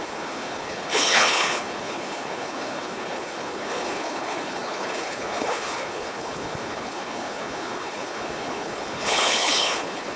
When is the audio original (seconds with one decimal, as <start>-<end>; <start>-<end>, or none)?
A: none